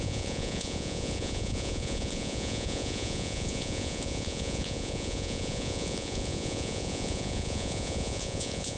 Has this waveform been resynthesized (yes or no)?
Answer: yes